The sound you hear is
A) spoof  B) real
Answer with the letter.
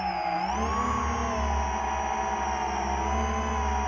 B